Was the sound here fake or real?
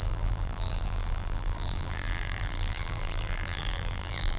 fake